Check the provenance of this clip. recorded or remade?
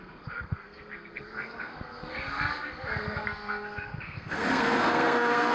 remade